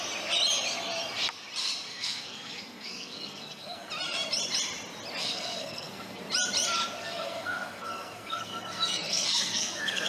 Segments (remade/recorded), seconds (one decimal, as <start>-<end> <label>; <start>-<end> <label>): 0.0-1.9 recorded; 1.9-3.9 remade; 3.9-5.2 recorded; 5.2-6.2 remade; 6.2-7.0 recorded; 7.0-10.1 remade